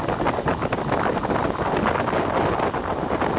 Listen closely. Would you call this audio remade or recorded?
recorded